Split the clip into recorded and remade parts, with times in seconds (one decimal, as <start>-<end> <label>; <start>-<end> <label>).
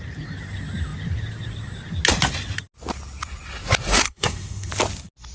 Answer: 0.0-4.0 recorded; 4.0-4.7 remade; 4.7-5.3 recorded